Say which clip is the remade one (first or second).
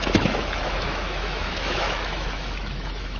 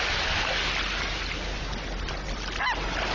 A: first